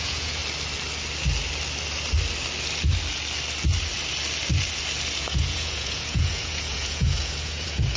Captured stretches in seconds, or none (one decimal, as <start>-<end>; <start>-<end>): 0.4-5.2